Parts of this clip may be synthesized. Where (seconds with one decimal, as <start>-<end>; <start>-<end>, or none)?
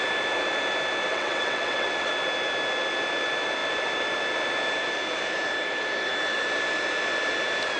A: 1.1-2.1